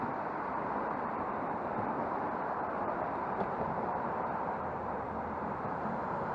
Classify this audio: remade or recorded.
remade